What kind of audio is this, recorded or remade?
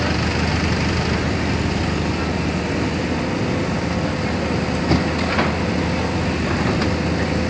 recorded